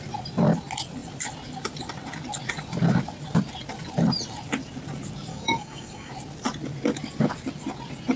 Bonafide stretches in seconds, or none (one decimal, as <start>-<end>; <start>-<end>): 0.0-5.3; 6.1-8.2